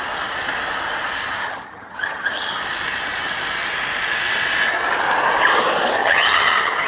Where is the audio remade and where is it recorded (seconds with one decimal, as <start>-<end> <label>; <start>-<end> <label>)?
0.0-1.4 recorded; 1.4-2.6 remade; 2.6-6.0 recorded; 6.0-6.9 remade